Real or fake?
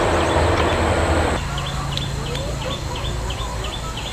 real